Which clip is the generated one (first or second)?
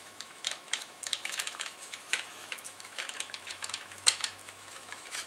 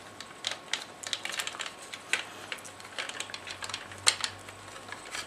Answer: first